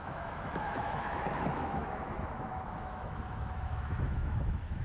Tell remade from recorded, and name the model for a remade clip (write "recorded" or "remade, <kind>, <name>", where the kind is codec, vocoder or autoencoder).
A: remade, autoencoder, DAC-VAE